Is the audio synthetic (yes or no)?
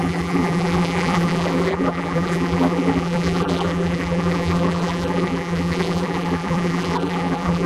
yes